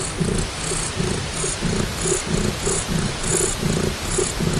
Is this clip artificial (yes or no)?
no